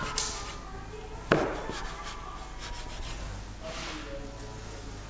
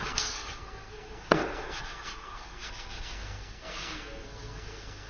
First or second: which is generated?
second